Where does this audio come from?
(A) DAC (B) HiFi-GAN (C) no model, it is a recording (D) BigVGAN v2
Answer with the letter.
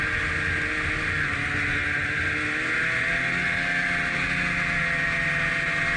C